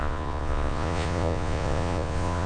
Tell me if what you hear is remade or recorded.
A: remade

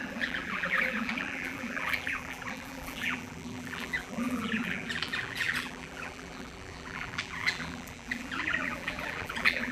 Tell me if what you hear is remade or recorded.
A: remade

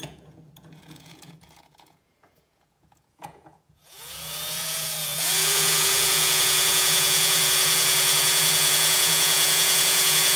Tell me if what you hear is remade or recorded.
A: remade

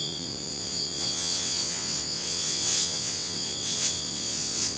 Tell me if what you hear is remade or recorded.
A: remade